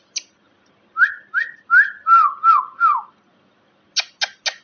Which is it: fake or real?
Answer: real